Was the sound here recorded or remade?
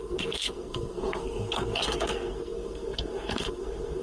remade